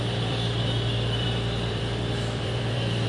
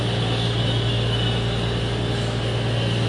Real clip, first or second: second